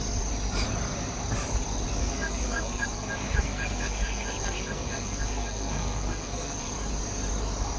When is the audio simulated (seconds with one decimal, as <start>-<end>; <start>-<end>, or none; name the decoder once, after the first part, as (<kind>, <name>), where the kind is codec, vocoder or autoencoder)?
2.0-6.7 (codec, SNAC)